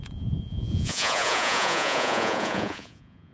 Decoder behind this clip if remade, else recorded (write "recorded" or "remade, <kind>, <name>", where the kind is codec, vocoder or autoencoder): remade, vocoder, Vocos